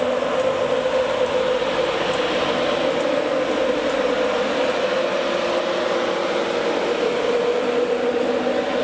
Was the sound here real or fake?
real